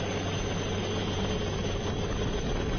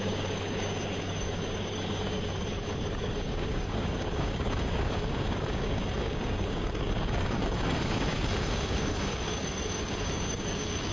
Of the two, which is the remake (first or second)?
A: second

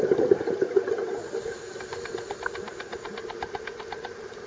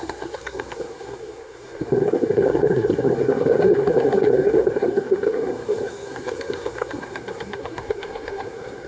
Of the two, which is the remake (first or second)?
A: second